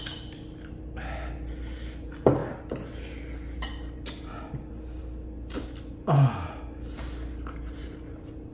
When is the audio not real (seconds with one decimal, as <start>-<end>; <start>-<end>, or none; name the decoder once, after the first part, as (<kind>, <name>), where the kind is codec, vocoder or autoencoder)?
none